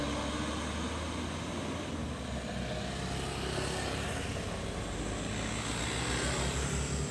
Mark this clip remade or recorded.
recorded